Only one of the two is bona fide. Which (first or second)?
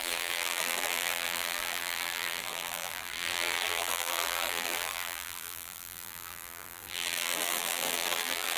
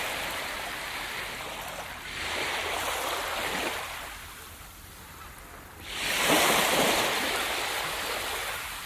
second